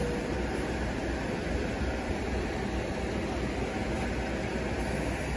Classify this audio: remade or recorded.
recorded